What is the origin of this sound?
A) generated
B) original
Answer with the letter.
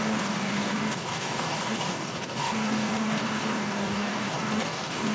A